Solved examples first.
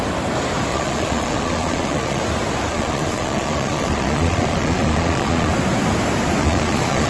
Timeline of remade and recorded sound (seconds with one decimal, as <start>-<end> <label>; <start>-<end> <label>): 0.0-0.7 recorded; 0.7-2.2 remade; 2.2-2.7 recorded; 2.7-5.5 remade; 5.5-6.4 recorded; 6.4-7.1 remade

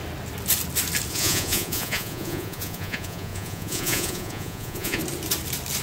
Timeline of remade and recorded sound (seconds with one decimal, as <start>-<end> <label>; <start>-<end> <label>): 0.0-1.1 recorded; 1.1-5.0 remade; 5.0-5.8 recorded

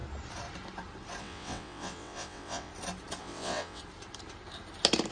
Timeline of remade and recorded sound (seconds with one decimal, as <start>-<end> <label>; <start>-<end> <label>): 0.0-1.2 recorded; 1.2-2.7 remade; 2.7-3.2 recorded; 3.2-3.8 remade; 3.8-5.1 recorded

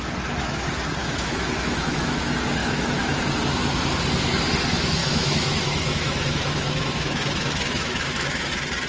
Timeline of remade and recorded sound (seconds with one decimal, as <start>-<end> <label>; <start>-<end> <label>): 0.0-1.0 recorded; 1.0-2.2 remade; 2.2-2.6 recorded; 2.6-3.2 remade; 3.2-5.0 recorded; 5.0-8.5 remade; 8.5-8.9 recorded

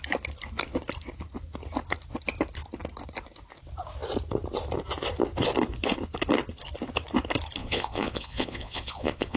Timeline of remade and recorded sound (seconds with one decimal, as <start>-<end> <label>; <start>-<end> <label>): 0.0-7.6 recorded; 7.6-9.4 remade